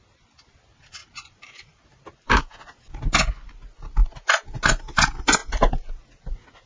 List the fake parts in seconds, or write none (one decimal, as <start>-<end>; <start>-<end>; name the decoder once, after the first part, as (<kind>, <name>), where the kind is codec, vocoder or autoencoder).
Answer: 1.0-2.4 (vocoder, BigVGAN v2)

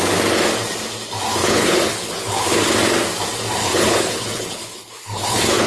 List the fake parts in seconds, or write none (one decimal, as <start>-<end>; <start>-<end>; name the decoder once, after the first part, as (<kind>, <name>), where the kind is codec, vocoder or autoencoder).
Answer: 1.4-2.7 (codec, HILCodec); 3.6-5.7

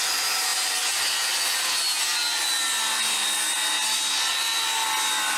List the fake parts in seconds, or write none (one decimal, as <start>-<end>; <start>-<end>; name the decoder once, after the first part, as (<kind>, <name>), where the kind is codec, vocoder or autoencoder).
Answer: none

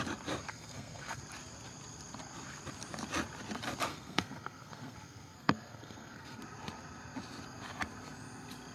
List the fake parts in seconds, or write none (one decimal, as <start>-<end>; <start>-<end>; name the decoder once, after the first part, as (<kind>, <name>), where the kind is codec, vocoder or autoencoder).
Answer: 0.5-1.2 (codec, SNAC); 3.9-6.4

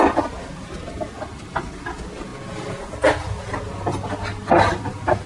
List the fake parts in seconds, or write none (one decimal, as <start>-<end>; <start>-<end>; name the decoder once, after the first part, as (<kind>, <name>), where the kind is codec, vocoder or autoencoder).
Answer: none